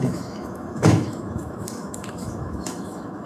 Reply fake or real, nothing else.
fake